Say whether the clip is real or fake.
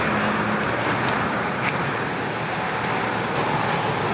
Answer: real